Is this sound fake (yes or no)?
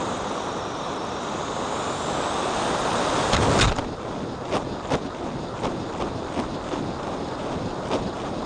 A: no